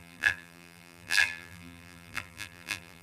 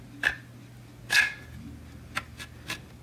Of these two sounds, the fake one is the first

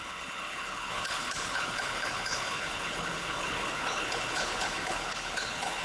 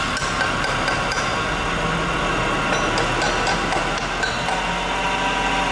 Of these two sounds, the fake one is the first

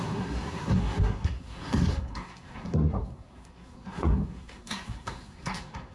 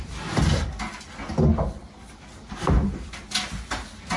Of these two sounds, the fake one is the first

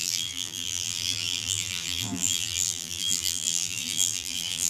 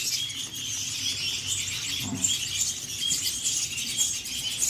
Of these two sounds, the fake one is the first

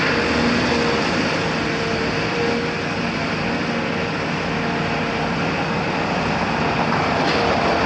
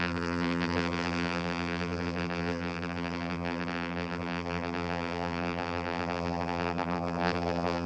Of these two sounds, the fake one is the second